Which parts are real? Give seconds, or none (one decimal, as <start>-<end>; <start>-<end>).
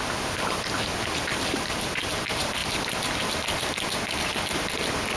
0.0-5.2